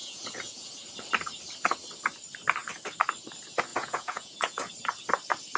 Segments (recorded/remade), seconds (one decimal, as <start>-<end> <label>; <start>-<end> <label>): 0.0-0.7 remade; 0.7-3.7 recorded; 3.7-4.7 remade; 4.7-5.6 recorded